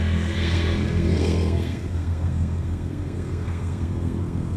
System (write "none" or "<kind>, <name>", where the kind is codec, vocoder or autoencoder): codec, SNAC